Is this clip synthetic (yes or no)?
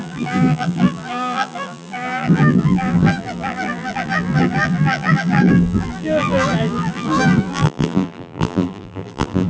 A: yes